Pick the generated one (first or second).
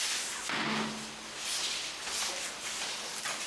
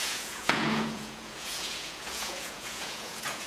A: second